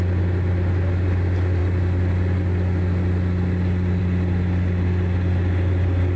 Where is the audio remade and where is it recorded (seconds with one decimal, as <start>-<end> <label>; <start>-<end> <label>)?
0.0-6.2 recorded